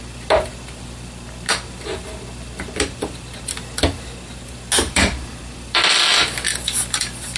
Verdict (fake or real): real